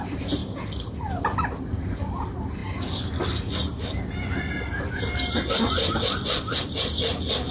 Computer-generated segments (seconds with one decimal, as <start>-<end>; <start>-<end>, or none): none